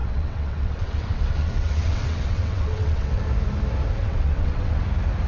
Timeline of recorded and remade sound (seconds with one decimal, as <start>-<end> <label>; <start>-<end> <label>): 0.0-3.2 remade; 3.2-4.0 recorded; 4.0-4.8 remade; 4.8-5.3 recorded